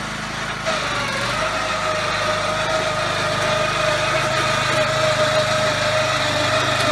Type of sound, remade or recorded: recorded